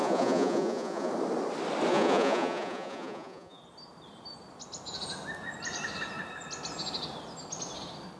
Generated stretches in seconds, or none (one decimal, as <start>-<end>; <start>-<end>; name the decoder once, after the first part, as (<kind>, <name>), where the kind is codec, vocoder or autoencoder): 0.0-1.1 (vocoder, Vocos); 1.9-3.6